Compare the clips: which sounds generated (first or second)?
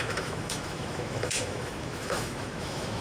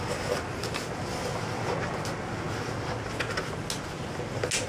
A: first